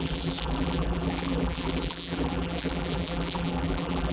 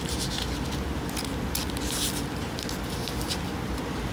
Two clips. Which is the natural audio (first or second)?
second